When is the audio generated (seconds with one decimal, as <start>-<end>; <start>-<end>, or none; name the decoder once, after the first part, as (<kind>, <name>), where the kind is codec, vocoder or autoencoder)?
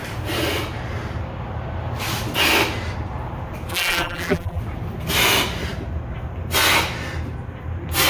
3.7-4.6 (vocoder, BigVGAN v2)